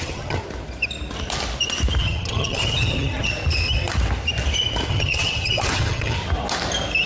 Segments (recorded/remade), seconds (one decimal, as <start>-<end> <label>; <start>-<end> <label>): 0.0-0.4 remade; 0.4-2.0 recorded; 2.0-3.3 remade; 3.3-4.9 recorded; 4.9-6.2 remade; 6.2-7.1 recorded

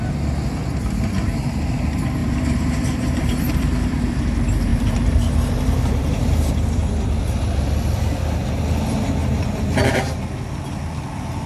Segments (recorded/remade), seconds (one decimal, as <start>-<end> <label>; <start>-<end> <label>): 0.0-2.2 recorded; 2.2-4.2 remade; 4.2-4.7 recorded; 4.7-6.5 remade; 6.5-9.2 recorded; 9.2-10.2 remade; 10.2-11.5 recorded